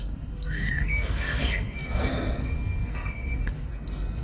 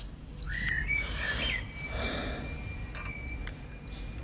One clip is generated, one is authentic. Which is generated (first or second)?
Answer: first